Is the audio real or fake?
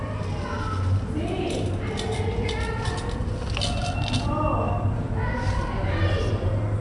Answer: real